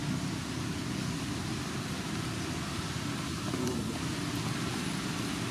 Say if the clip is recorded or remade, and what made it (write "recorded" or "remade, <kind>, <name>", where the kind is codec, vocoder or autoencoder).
recorded